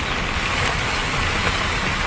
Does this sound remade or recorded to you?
recorded